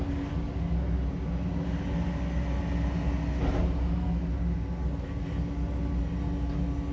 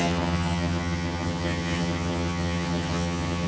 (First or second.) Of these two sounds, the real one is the first